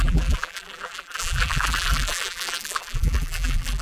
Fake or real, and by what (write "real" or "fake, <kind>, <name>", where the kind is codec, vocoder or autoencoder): fake, vocoder, BigVGAN v2